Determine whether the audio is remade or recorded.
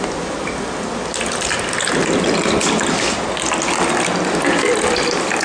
recorded